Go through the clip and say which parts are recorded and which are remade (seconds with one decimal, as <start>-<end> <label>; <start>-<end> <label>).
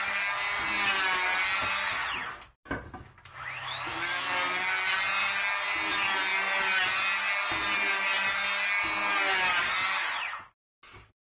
0.0-11.3 recorded